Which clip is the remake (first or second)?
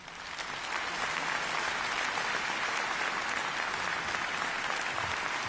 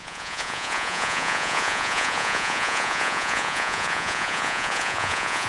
second